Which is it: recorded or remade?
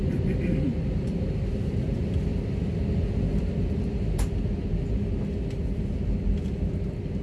recorded